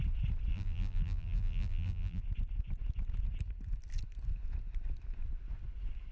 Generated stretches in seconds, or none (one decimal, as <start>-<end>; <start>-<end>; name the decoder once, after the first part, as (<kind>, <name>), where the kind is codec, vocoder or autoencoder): 0.5-2.2 (vocoder, BigVGAN v2)